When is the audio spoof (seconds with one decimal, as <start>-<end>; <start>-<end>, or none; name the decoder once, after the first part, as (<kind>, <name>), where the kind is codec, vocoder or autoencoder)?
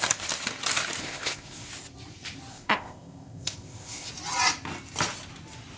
1.0-1.7 (codec, ZipCodec); 2.5-4.1